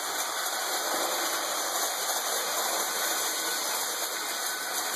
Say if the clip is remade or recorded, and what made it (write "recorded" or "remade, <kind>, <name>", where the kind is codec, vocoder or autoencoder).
recorded